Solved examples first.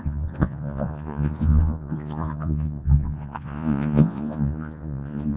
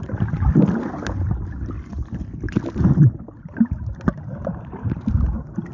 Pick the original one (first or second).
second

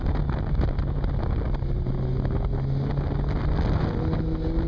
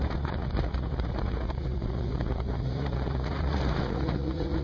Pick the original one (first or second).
first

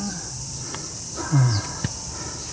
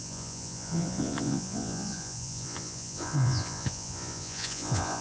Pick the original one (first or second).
first